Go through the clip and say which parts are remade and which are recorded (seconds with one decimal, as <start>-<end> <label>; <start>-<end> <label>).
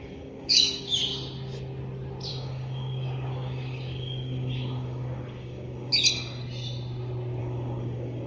0.0-1.0 remade; 1.0-2.3 recorded; 2.3-5.9 remade; 5.9-7.4 recorded; 7.4-8.3 remade